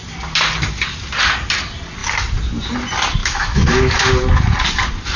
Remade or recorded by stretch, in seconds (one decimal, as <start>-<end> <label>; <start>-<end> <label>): 0.0-3.2 recorded; 3.2-4.1 remade; 4.1-5.2 recorded